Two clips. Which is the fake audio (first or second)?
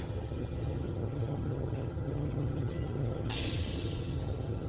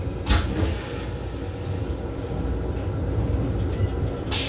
first